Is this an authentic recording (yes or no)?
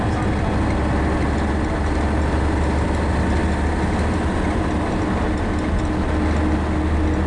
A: yes